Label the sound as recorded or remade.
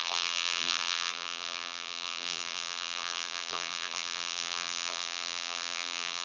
remade